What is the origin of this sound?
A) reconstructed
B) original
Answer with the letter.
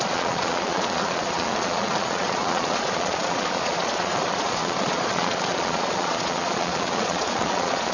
A